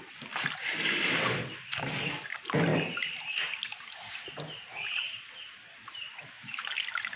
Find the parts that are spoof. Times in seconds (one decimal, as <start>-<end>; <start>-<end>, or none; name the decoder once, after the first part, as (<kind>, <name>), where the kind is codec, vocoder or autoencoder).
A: 6.1-6.7 (autoencoder, DAC-VAE)